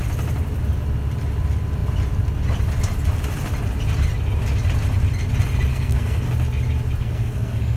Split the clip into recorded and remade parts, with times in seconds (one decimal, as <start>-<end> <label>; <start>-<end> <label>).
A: 0.0-5.7 recorded; 5.7-6.3 remade; 6.3-7.0 recorded; 7.0-7.8 remade